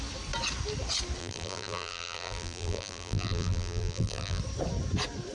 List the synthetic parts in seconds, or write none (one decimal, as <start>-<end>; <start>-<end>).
1.2-4.4

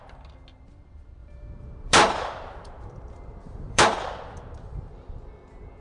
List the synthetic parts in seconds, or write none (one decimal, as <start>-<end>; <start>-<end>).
1.2-3.8

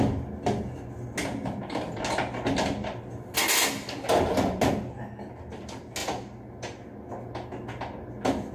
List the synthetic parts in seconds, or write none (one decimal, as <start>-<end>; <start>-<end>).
none

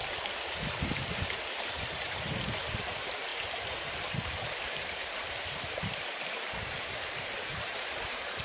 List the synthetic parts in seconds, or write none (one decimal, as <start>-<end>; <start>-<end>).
0.0-8.4

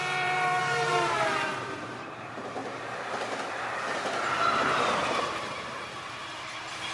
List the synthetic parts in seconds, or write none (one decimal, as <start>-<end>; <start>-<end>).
0.0-2.6; 5.2-6.9

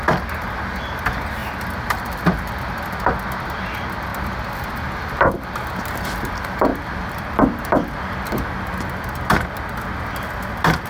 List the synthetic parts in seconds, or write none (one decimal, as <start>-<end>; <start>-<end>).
1.4-2.5; 4.1-5.5; 6.7-8.9